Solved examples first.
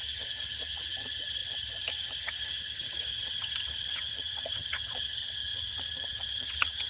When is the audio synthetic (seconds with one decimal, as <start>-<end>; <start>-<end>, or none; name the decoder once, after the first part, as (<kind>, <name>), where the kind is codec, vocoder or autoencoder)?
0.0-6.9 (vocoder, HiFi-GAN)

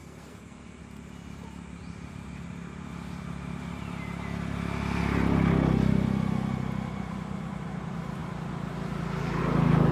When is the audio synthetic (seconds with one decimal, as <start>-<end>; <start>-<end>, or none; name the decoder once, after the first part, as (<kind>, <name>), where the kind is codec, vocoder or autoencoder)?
0.0-0.8 (codec, SNAC)

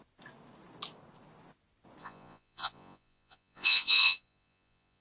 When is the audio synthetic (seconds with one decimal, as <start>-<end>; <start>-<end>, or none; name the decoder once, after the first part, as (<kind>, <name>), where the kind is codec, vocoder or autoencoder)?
2.0-5.0 (vocoder, Vocos)

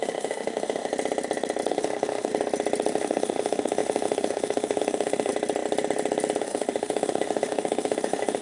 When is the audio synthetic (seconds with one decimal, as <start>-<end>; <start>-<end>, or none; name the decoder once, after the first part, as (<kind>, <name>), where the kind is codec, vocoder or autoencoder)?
0.0-0.9 (autoencoder, DAC-VAE); 1.7-2.3; 2.9-5.3; 6.4-8.4